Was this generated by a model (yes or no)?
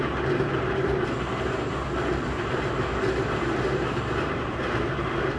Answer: yes